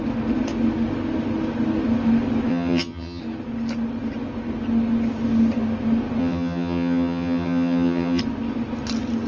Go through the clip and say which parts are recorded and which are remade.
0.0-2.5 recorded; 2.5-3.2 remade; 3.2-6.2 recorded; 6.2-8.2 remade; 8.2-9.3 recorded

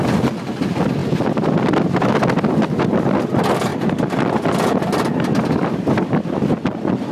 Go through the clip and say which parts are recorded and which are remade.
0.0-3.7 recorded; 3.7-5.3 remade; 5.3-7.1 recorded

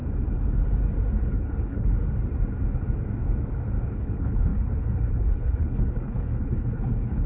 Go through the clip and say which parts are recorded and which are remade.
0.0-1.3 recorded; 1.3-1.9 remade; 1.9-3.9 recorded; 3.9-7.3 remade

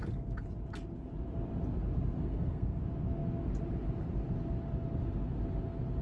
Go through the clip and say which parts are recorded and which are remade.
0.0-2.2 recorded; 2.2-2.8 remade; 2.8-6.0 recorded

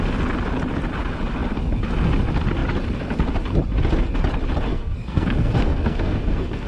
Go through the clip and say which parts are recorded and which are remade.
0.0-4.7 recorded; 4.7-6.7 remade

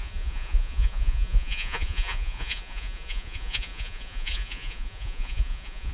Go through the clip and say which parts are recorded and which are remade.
0.0-5.9 remade